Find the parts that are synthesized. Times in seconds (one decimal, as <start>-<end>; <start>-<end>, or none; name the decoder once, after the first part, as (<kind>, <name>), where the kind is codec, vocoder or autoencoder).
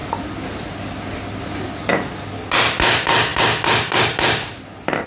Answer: none